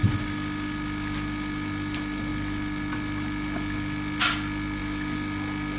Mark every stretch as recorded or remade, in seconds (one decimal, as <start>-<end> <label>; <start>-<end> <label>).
0.0-5.8 recorded

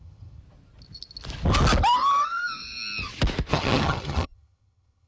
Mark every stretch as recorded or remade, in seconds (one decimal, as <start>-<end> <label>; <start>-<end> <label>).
0.0-0.4 remade; 0.4-3.5 recorded; 3.5-5.1 remade

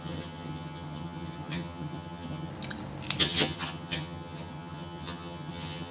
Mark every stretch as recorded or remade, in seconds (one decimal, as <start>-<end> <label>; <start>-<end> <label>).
0.0-2.5 remade; 2.5-3.2 recorded; 3.2-5.9 remade

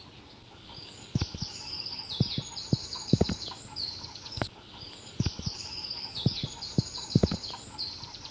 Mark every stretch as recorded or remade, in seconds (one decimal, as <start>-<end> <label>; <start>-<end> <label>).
0.0-0.4 recorded; 0.4-2.0 remade; 2.0-2.8 recorded; 2.8-7.8 remade; 7.8-8.3 recorded

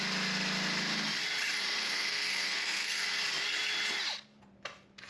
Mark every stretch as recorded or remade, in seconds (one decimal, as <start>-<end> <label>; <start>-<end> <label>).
0.0-1.8 recorded; 1.8-3.2 remade; 3.2-5.1 recorded